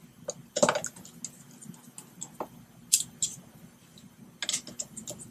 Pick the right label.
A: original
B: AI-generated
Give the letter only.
A